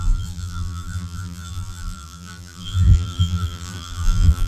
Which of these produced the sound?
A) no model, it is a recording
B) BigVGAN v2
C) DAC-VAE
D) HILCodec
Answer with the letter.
B